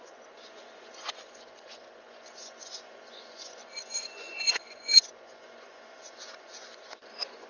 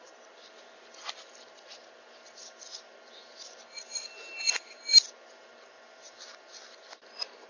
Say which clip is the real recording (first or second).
second